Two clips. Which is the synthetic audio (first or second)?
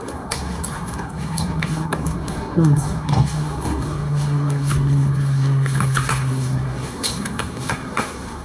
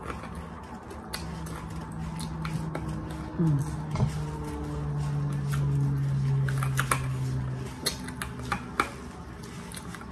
first